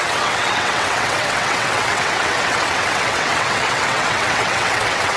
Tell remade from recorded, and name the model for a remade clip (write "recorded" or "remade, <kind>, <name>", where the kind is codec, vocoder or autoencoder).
remade, vocoder, WaveNeXt